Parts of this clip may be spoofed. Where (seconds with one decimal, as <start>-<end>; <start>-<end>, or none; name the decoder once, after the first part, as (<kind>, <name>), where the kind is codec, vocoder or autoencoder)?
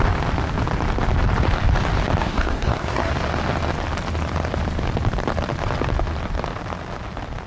2.2-3.1 (codec, SNAC)